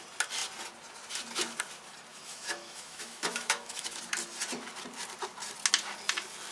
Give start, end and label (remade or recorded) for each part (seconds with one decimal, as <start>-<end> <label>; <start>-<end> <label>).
0.0-2.1 recorded; 2.1-4.0 remade; 4.0-6.5 recorded